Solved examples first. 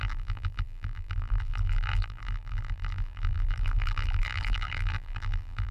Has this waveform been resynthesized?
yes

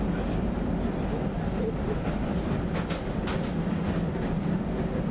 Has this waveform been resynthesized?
no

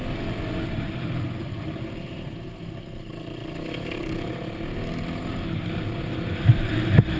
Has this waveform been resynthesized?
no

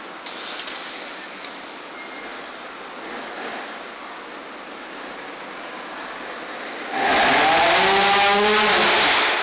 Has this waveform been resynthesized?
no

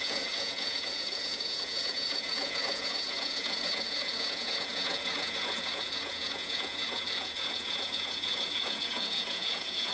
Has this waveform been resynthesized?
yes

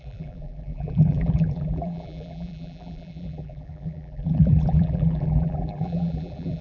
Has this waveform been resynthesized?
yes